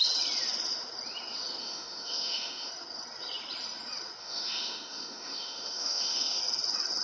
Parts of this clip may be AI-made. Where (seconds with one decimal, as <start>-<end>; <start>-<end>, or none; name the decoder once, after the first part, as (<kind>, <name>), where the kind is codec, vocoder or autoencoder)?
1.6-2.7 (autoencoder, DAC-VAE); 4.2-6.4